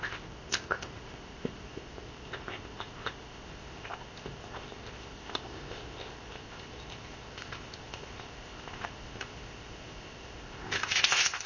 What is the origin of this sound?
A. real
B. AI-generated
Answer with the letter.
B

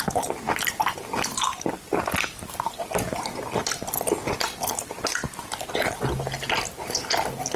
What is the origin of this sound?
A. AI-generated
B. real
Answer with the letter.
B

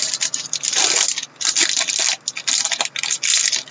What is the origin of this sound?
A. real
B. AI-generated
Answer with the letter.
A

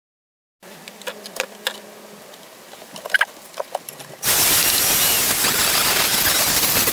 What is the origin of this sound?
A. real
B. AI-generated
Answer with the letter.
A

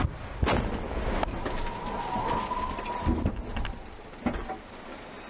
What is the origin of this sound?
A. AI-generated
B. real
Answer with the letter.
B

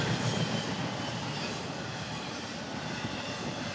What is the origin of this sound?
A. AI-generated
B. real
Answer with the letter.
B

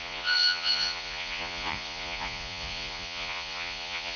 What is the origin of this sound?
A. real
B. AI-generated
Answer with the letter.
B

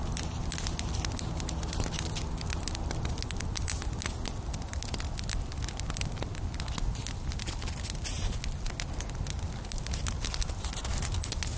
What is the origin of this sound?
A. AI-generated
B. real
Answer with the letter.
B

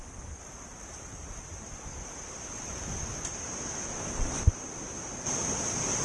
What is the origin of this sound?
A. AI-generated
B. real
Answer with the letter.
A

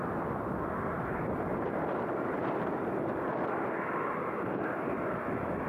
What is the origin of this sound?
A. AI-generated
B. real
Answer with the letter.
B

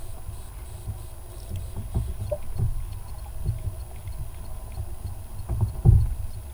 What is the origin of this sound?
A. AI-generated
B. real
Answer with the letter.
B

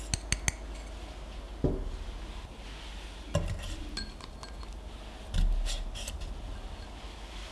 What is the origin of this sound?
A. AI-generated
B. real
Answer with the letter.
B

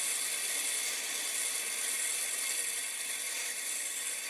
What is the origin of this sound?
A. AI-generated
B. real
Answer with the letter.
A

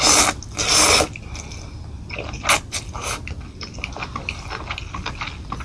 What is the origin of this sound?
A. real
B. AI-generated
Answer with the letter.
A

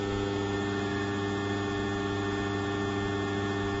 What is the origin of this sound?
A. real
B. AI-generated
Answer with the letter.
A